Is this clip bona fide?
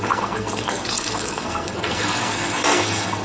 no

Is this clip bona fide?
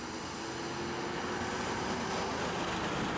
yes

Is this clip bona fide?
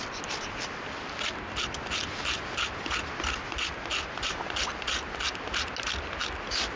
yes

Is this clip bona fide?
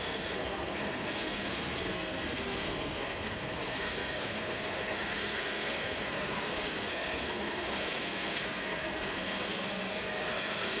no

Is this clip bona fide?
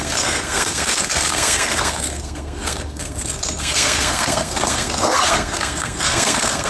no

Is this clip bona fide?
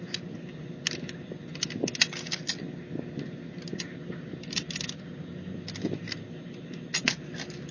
yes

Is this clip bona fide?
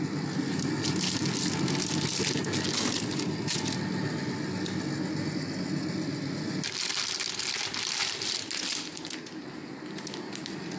yes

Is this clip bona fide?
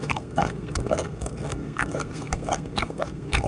no